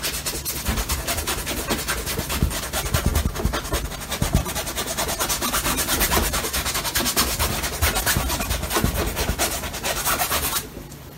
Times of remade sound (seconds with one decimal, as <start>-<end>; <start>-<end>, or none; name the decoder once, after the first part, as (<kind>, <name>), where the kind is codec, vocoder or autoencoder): none